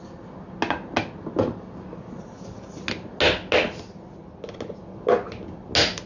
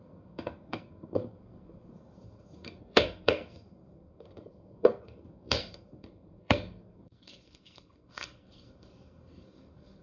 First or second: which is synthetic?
second